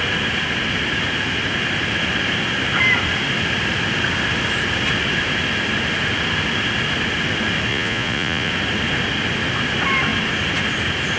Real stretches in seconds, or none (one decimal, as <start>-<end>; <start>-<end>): 0.0-7.7; 8.5-11.2